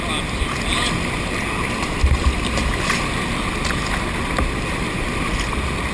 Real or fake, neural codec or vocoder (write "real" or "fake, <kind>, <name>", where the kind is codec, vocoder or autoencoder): real